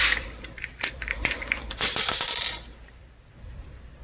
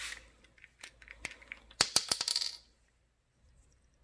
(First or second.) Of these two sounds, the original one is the second